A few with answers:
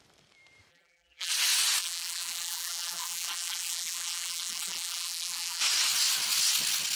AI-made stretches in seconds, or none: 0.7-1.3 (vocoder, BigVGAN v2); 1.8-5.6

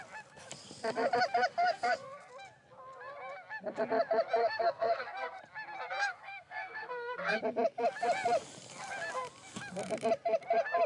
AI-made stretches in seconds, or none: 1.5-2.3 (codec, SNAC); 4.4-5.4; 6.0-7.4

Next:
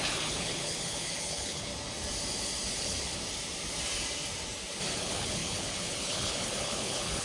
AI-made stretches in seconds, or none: 0.0-1.7 (codec, HILCodec); 2.7-3.1; 5.0-7.2